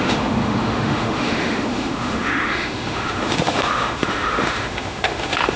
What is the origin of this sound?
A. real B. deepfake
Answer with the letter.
B